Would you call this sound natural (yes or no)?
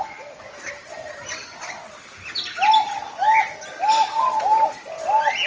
yes